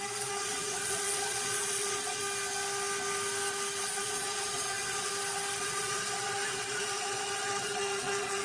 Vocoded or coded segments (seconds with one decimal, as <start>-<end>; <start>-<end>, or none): 0.0-2.2; 3.8-5.1; 5.6-8.4